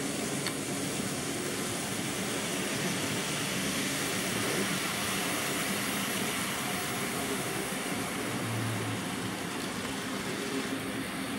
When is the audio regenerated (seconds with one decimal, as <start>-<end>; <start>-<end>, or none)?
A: 3.5-4.0; 7.2-7.9